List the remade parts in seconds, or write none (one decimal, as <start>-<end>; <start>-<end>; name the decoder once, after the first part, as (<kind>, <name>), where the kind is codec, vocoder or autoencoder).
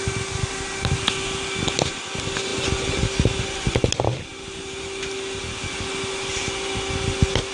none